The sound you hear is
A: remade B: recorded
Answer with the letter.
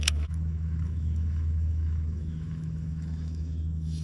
A